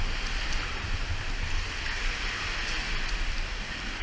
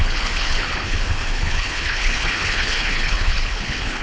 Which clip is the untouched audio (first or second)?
first